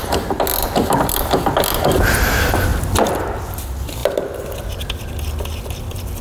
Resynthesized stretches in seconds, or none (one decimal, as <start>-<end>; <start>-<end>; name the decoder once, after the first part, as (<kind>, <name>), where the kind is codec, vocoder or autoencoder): none